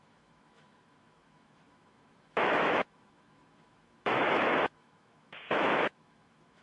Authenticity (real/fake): fake